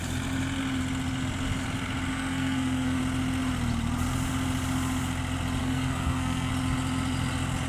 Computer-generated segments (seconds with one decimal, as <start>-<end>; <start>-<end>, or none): 2.1-3.0; 5.6-6.5